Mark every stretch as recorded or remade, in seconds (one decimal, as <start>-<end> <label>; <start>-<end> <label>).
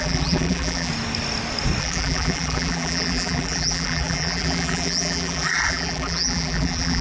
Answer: 0.0-0.9 remade; 0.9-1.8 recorded; 1.8-7.0 remade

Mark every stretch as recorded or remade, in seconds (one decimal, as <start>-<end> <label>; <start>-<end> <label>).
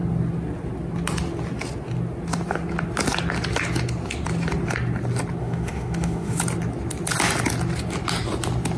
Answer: 0.0-5.4 recorded; 5.4-6.4 remade; 6.4-8.8 recorded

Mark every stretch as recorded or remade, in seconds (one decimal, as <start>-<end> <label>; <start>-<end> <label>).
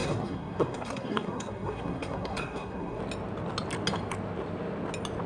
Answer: 0.0-3.0 remade; 3.0-5.3 recorded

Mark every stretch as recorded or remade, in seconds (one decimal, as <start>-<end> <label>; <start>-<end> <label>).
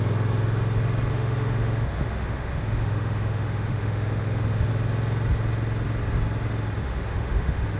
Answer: 0.0-1.1 recorded; 1.1-4.7 remade; 4.7-6.8 recorded; 6.8-7.8 remade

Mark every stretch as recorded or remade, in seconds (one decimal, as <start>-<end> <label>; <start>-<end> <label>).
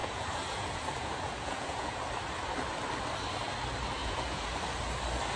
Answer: 0.0-2.0 remade; 2.0-4.0 recorded; 4.0-4.5 remade; 4.5-5.4 recorded